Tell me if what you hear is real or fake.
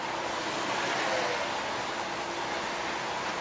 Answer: real